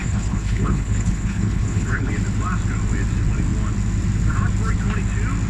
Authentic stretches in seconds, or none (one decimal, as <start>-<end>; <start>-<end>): 2.1-5.5